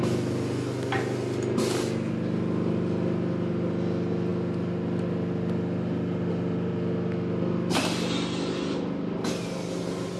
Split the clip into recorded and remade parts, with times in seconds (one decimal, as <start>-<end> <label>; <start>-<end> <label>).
0.0-10.2 recorded